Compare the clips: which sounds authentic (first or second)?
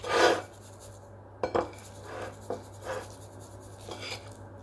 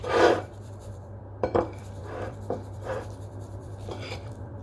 first